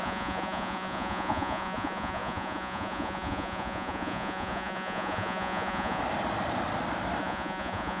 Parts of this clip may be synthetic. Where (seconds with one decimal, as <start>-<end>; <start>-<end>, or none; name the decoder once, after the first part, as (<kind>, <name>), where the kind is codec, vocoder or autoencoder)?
0.0-6.0 (vocoder, Vocos); 7.2-8.0